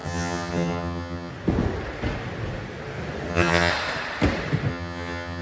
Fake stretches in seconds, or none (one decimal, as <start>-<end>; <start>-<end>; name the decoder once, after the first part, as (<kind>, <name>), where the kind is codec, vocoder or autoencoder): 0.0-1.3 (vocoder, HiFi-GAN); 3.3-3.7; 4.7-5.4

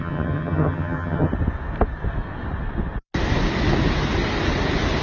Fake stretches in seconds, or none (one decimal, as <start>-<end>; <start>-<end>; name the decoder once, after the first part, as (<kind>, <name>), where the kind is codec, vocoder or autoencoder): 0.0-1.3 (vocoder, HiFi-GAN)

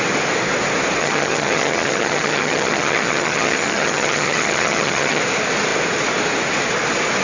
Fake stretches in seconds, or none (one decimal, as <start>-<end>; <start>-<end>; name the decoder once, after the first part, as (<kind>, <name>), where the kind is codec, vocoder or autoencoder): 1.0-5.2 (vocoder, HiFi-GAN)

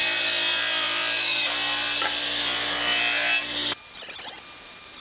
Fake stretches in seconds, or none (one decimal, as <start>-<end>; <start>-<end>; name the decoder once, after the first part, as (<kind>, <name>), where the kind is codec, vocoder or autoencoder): none

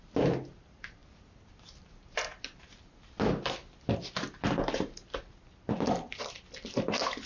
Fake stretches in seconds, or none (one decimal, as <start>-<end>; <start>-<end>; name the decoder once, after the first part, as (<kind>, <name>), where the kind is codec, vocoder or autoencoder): none